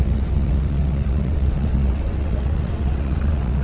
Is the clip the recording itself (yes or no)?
no